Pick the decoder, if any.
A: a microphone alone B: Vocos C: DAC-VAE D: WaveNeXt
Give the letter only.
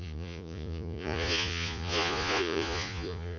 B